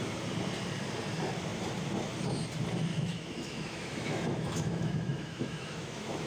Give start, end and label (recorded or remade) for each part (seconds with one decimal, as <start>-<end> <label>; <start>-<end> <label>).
0.0-2.9 recorded; 2.9-6.3 remade